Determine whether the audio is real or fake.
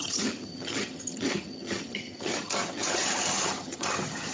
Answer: fake